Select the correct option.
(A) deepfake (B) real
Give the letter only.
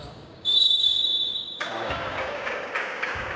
A